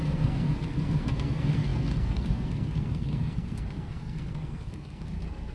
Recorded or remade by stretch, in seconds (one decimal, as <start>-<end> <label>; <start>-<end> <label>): 0.0-5.5 remade